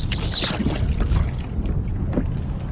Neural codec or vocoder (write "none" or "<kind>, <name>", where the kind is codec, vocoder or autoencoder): none